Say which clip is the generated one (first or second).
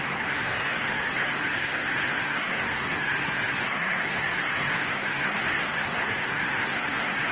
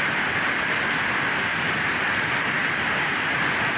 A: first